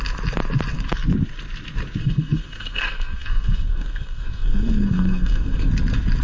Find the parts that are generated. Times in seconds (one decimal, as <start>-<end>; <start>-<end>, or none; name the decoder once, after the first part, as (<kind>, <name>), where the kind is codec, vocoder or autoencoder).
2.0-5.7 (codec, SNAC)